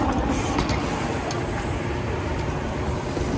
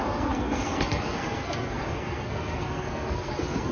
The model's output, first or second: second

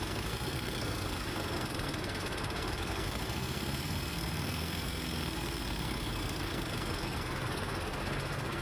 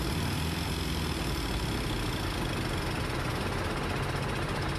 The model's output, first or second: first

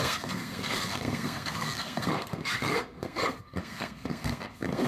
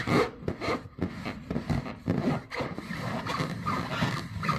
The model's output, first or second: first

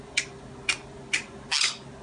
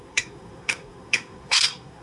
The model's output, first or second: second